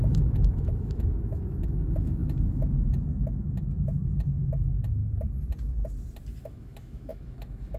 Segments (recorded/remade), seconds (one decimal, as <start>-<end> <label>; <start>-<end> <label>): 0.0-5.0 remade; 5.0-6.4 recorded; 6.4-7.8 remade